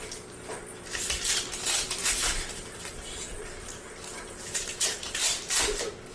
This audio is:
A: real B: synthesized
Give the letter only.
B